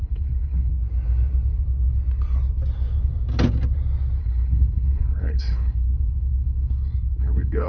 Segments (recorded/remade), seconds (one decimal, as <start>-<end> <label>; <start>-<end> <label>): 0.0-0.7 remade; 0.7-4.2 recorded; 4.2-7.7 remade